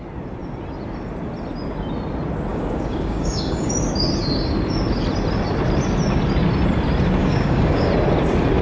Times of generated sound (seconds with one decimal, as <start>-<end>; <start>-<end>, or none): 2.5-3.7; 7.2-7.9